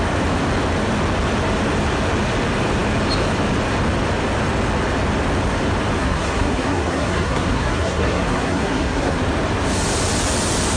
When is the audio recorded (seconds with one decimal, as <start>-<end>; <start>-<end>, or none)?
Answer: 0.0-6.0; 9.2-10.8